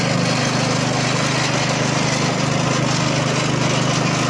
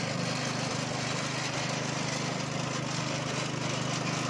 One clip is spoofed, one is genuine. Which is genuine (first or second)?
first